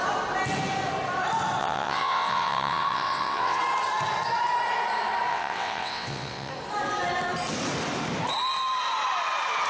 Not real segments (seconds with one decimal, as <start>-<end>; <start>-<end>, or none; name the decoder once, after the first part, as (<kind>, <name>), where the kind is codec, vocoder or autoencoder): 1.6-3.6 (vocoder, WaveNeXt); 5.3-6.5